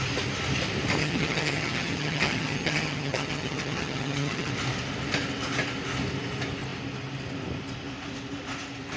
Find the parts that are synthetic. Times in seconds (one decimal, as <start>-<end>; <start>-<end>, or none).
1.0-4.5